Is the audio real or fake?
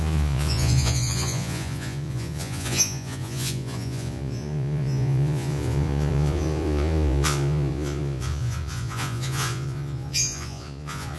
fake